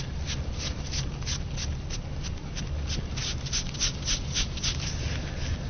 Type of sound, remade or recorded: recorded